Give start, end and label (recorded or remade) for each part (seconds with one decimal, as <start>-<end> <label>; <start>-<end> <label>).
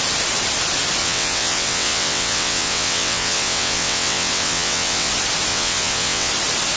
0.0-1.0 recorded; 1.0-5.1 remade; 5.1-5.5 recorded; 5.5-6.3 remade; 6.3-6.8 recorded